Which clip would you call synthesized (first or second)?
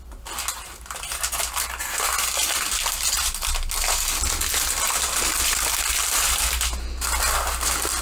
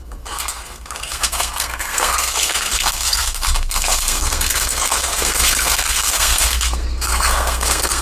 second